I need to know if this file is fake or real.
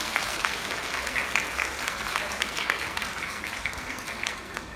fake